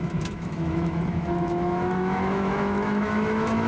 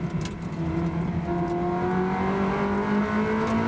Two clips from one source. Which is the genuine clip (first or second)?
second